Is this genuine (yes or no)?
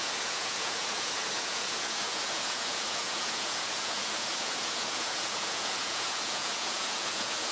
no